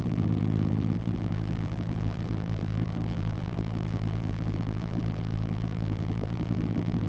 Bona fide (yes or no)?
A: no